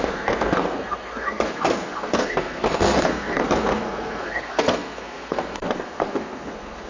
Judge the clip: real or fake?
fake